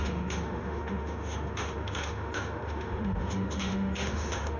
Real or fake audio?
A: fake